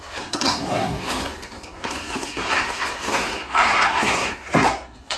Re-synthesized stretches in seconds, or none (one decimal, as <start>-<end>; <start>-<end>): 0.0-5.2